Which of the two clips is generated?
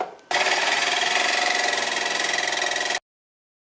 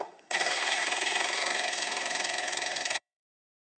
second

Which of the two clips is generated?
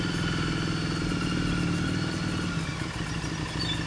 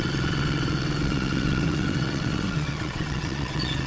second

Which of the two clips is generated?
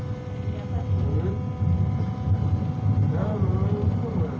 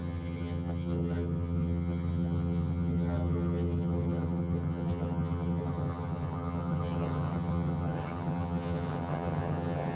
second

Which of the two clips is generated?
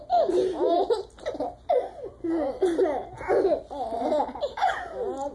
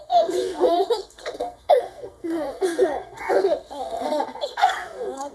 second